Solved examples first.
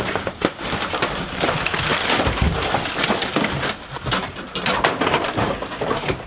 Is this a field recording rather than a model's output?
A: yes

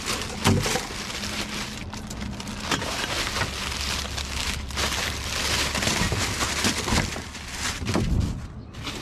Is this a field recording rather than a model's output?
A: yes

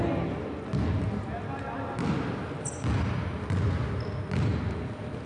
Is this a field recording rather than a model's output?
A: yes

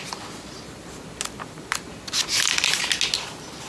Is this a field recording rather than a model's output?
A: yes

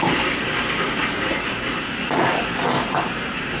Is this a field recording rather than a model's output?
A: yes